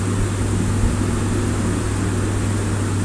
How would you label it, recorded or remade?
recorded